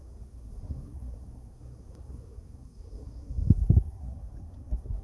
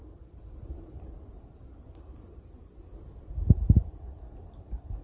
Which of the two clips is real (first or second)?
second